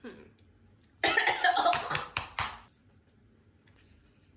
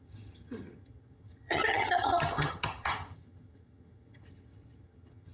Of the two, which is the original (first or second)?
first